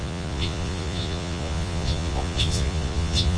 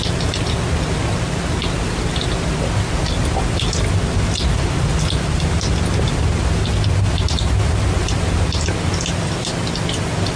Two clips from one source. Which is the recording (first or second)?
second